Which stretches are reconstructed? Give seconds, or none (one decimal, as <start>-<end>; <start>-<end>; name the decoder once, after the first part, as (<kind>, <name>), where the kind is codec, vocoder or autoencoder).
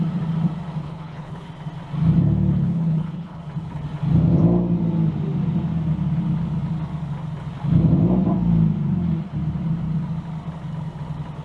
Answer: 0.8-1.5 (codec, HILCodec); 2.5-3.4